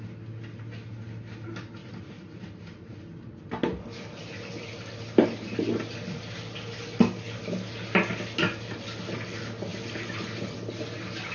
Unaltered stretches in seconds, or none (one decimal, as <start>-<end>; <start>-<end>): 0.0-1.8; 2.6-11.3